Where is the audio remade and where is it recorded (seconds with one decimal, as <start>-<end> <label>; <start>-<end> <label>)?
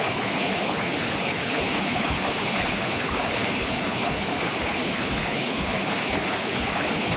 0.0-7.2 remade